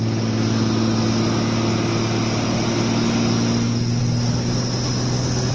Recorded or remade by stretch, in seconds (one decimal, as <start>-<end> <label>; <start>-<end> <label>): 0.0-5.5 recorded